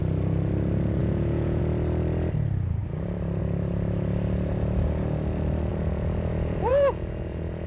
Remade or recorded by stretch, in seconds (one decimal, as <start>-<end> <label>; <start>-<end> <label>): 0.0-1.0 recorded; 1.0-1.6 remade; 1.6-5.7 recorded; 5.7-7.7 remade